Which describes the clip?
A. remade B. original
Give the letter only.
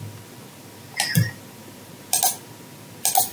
B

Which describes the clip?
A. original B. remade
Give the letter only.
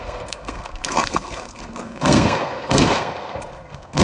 B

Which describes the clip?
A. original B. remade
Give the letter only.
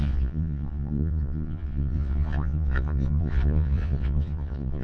B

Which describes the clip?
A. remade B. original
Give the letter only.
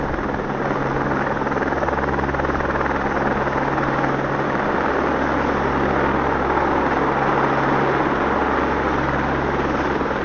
B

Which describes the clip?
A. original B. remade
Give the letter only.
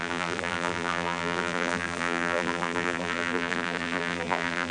B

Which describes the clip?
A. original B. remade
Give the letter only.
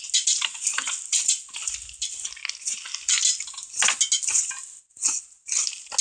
A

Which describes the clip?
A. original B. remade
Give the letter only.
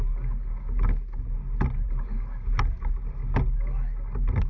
A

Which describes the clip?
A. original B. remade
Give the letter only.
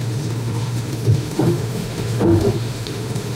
B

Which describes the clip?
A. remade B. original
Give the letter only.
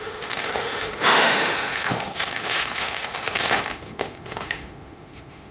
A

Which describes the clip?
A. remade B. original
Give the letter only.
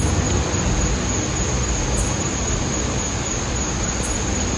B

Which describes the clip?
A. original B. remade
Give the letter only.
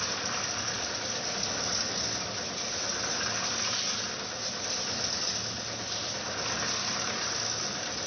A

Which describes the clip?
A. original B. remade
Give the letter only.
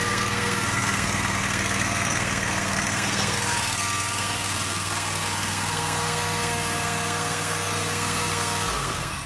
B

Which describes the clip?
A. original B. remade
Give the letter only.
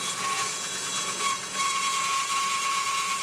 B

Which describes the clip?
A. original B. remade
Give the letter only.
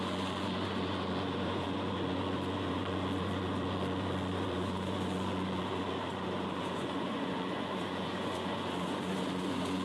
B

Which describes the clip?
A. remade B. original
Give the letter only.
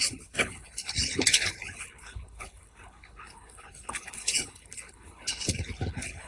A